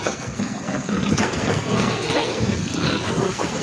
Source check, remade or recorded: remade